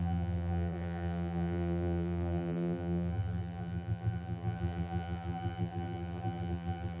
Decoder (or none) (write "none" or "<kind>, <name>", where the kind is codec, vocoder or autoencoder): vocoder, BigVGAN v2